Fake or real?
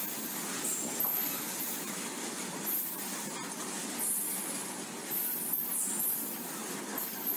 real